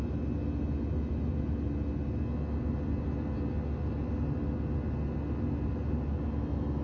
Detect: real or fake real